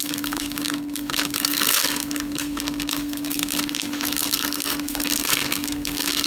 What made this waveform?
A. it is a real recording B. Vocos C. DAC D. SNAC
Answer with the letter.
D